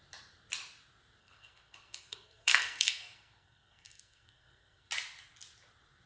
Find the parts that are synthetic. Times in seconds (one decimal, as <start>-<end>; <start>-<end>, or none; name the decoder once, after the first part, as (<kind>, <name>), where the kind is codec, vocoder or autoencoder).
1.2-4.9 (codec, SNAC)

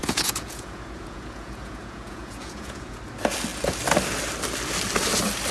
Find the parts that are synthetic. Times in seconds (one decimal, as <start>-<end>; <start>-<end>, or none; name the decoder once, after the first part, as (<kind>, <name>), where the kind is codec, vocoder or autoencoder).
0.0-3.0 (vocoder, Vocos)

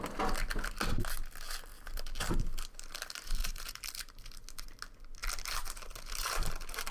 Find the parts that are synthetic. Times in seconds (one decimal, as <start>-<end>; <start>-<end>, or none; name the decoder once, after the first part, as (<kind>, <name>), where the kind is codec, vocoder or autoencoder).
1.7-2.4 (vocoder, BigVGAN v2); 3.4-4.2

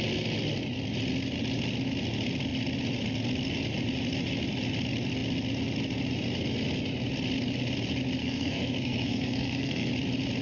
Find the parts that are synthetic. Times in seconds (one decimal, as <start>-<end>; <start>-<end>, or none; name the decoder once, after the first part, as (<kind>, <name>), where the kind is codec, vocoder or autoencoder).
8.2-9.9 (codec, SNAC)

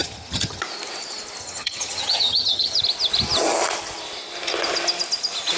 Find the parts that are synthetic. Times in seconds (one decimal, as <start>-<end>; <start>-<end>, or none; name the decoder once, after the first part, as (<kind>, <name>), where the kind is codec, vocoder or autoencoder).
0.0-0.6 (vocoder, HiFi-GAN); 1.4-2.8